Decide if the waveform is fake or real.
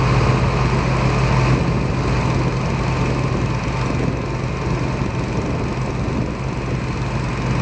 real